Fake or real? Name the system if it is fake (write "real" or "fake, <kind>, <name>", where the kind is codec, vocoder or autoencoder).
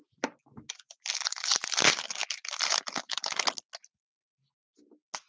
real